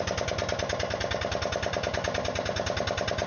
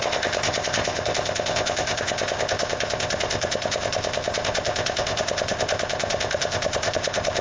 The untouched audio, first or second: first